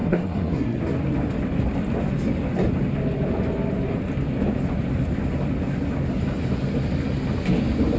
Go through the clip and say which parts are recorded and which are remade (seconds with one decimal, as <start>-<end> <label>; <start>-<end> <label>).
0.0-0.8 remade; 0.8-8.0 recorded